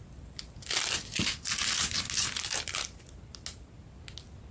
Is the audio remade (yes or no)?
no